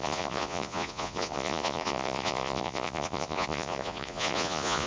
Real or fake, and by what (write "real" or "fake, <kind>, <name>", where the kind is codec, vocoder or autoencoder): fake, vocoder, Vocos